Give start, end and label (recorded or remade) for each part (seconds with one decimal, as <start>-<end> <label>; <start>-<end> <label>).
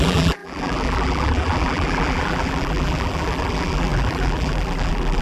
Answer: 0.0-5.2 remade